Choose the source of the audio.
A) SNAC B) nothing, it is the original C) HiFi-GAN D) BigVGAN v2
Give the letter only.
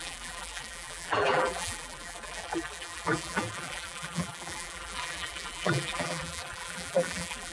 D